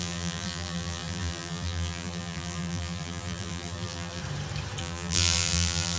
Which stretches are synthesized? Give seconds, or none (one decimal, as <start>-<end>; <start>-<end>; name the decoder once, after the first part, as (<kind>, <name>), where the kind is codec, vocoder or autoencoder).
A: 0.0-4.2 (vocoder, BigVGAN v2); 4.8-6.0